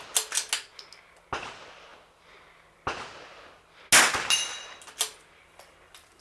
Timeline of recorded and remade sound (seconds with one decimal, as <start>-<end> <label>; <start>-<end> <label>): 0.0-6.2 recorded

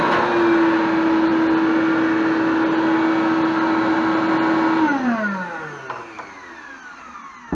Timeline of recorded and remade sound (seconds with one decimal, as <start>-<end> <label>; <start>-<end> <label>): 0.0-7.5 recorded

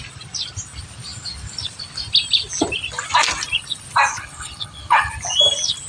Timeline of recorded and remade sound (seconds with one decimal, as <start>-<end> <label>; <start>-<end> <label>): 0.0-4.1 recorded; 4.1-5.1 remade; 5.1-5.9 recorded